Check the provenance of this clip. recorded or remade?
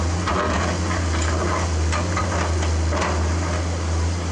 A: recorded